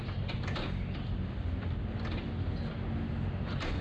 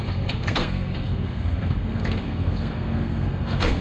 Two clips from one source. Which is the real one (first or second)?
first